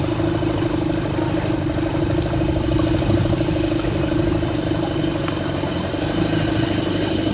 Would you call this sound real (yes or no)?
yes